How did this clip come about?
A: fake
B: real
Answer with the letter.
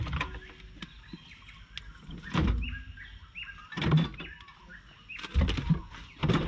B